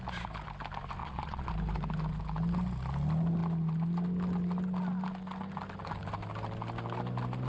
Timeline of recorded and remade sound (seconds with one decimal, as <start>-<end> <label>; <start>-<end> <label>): 0.0-1.0 recorded; 1.0-1.5 remade; 1.5-7.5 recorded